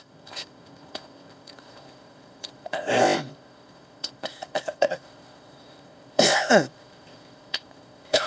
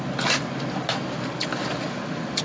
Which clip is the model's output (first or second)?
first